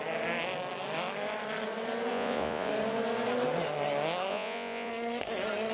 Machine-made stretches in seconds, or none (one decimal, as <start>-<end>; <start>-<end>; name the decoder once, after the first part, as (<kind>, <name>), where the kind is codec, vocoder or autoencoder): 2.1-2.7 (vocoder, Vocos); 4.3-4.9